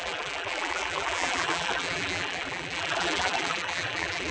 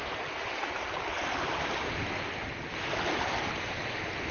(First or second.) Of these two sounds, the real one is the second